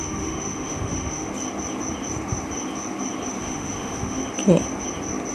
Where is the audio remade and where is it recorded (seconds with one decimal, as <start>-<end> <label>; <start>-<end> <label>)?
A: 0.0-1.3 remade; 1.3-3.4 recorded; 3.4-4.2 remade; 4.2-5.3 recorded